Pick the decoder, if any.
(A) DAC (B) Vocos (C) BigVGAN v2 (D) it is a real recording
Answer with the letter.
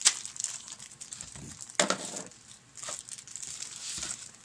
D